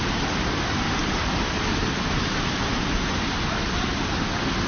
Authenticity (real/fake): real